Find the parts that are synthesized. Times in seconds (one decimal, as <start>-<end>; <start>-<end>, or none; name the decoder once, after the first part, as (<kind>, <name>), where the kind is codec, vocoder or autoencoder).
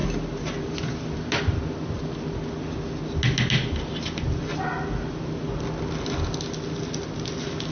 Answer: none